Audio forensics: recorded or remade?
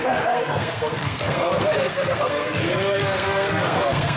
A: remade